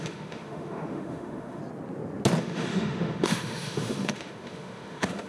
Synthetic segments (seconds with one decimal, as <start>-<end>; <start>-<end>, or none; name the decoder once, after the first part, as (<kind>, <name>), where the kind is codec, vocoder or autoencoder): 0.0-1.6 (autoencoder, DAC-VAE); 2.4-5.3